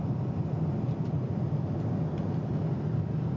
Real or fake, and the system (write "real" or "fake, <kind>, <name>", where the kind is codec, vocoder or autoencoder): real